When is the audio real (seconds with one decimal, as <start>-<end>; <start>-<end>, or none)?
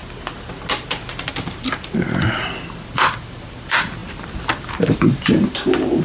0.0-1.3